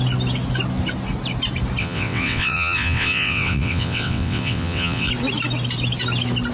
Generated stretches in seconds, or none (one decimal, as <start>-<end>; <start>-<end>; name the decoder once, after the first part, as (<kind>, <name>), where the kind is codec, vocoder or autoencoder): 1.8-5.1 (vocoder, WaveNeXt)